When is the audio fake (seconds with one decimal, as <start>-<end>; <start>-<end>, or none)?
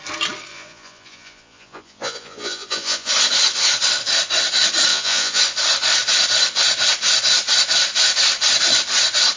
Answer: 0.5-3.1; 4.9-5.4